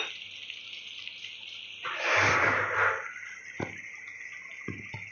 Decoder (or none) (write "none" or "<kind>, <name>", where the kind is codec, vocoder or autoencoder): none